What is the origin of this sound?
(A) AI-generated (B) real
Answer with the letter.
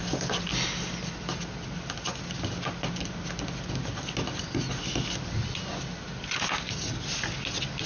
B